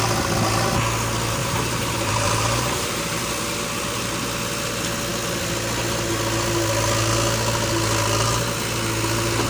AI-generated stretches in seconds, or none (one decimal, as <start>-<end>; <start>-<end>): 1.4-3.2